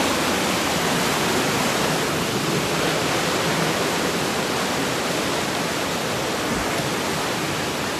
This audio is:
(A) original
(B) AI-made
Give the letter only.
A